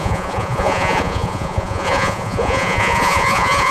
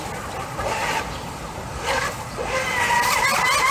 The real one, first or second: second